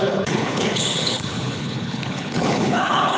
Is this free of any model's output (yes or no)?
no